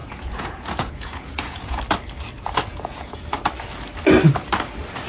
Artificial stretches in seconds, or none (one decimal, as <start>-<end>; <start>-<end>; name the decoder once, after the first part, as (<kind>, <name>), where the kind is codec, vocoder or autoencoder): 0.0-1.8 (vocoder, Vocos); 2.7-3.4